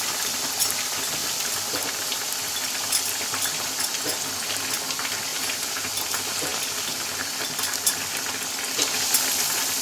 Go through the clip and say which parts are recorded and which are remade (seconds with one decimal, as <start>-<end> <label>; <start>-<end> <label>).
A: 0.0-5.3 recorded; 5.3-5.9 remade; 5.9-9.8 recorded